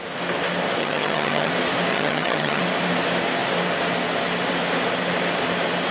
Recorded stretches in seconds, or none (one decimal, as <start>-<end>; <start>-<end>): 0.0-0.8; 1.5-1.9; 2.6-5.9